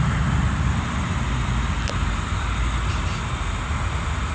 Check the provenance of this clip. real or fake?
real